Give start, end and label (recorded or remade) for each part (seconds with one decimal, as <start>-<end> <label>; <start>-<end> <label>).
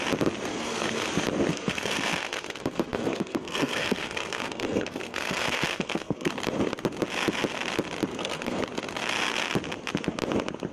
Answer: 0.0-0.5 recorded; 0.5-1.1 remade; 1.1-1.5 recorded; 1.5-6.3 remade; 6.3-8.1 recorded; 8.1-8.6 remade; 8.6-10.7 recorded